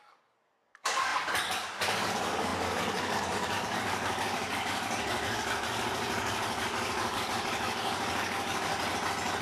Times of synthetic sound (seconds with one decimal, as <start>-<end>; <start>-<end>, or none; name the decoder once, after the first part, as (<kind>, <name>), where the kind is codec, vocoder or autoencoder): 0.0-8.7 (codec, DAC)